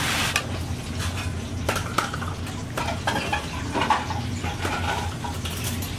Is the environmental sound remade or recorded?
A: recorded